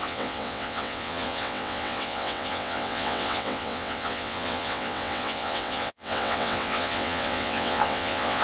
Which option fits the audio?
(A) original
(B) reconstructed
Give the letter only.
B